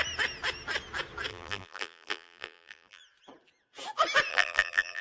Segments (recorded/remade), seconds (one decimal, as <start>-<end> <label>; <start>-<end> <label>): 0.0-1.3 recorded; 1.3-3.0 remade; 3.0-4.3 recorded; 4.3-5.0 remade